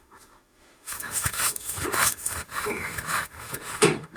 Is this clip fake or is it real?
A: fake